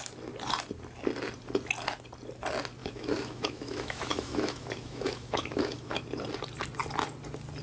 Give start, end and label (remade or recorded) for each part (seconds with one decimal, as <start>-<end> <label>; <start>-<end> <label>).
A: 0.0-2.8 recorded; 2.8-6.0 remade; 6.0-7.6 recorded

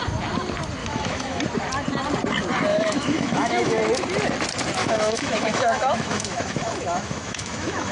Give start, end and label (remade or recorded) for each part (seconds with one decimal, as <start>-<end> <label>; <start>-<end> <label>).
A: 0.0-0.8 recorded; 0.8-1.4 remade; 1.4-2.7 recorded; 2.7-3.8 remade; 3.8-4.8 recorded; 4.8-7.9 remade

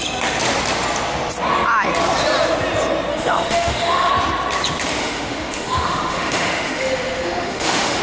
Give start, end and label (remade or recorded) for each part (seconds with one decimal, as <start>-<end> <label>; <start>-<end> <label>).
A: 0.0-3.1 recorded; 3.1-4.1 remade; 4.1-5.0 recorded; 5.0-8.0 remade

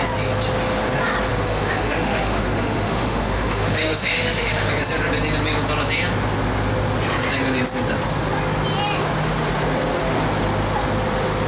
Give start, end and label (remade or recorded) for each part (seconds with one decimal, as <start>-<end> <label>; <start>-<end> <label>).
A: 0.0-1.3 recorded; 1.3-4.7 remade; 4.7-11.5 recorded

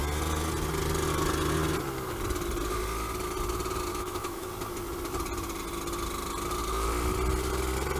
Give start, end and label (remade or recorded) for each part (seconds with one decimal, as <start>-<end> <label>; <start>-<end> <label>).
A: 0.0-3.9 recorded; 3.9-4.5 remade; 4.5-8.0 recorded

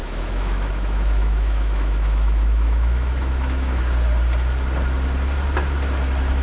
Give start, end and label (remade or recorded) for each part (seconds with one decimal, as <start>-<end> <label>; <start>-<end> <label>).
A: 0.0-3.8 remade; 3.8-6.4 recorded

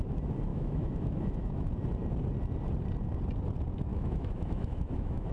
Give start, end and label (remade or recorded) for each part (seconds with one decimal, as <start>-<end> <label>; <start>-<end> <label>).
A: 0.0-0.5 recorded; 0.5-1.7 remade; 1.7-3.9 recorded; 3.9-5.3 remade